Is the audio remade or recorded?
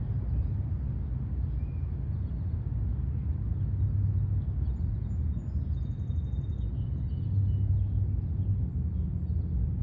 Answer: recorded